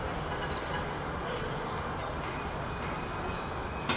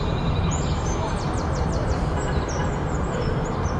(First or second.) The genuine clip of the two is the first